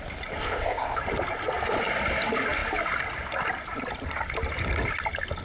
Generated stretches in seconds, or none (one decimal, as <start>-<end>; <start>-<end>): 0.4-1.0